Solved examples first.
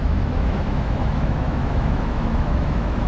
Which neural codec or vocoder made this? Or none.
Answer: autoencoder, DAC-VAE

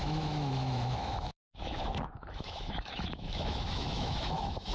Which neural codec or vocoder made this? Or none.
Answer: autoencoder, DAC-VAE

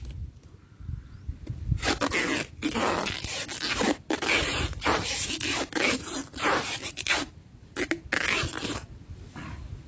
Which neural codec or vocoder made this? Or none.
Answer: none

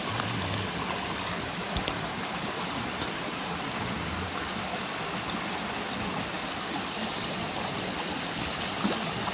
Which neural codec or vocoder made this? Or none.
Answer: none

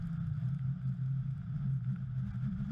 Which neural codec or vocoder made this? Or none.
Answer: none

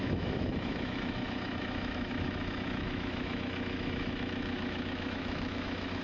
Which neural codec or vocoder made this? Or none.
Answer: autoencoder, DAC-VAE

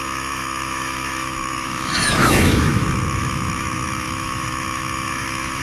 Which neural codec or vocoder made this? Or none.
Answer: autoencoder, DAC-VAE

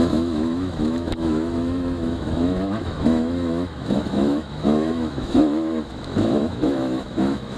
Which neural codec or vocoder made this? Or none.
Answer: autoencoder, DAC-VAE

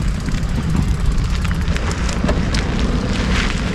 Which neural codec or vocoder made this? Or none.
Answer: none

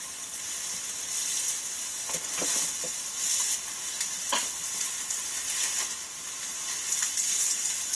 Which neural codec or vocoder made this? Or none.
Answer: none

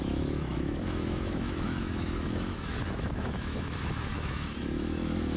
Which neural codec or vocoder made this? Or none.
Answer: autoencoder, DAC-VAE